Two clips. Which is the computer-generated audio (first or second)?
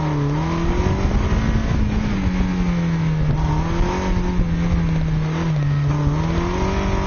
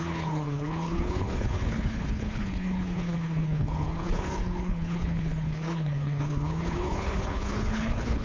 second